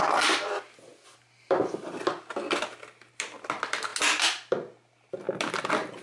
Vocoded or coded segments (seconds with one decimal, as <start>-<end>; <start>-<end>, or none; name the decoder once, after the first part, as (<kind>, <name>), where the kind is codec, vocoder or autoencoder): none